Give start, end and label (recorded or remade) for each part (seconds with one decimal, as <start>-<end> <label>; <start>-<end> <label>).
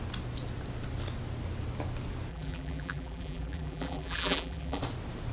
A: 0.0-2.3 recorded; 2.3-4.8 remade; 4.8-5.3 recorded